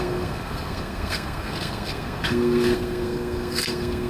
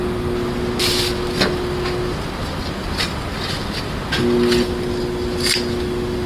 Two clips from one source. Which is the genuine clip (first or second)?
second